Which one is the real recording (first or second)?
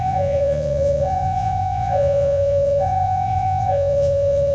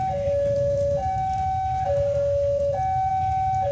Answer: second